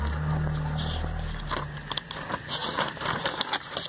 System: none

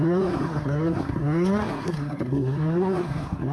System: codec, SNAC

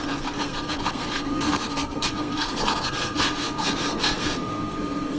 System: codec, SNAC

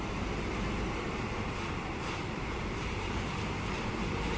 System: vocoder, BigVGAN v2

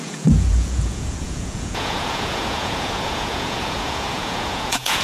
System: vocoder, Vocos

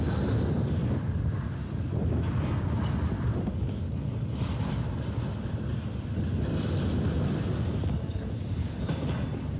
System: none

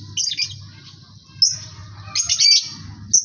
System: none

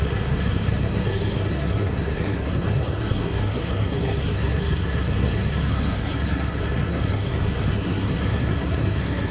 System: codec, SNAC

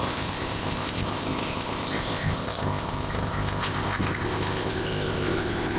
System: codec, ZipCodec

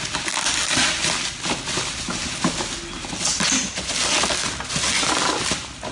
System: none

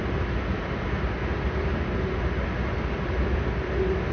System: none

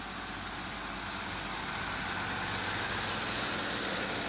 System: none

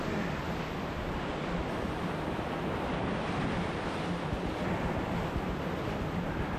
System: vocoder, BigVGAN v2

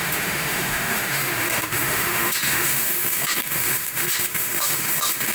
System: autoencoder, DAC-VAE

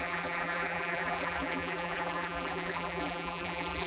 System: vocoder, BigVGAN v2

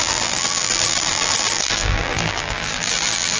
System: vocoder, BigVGAN v2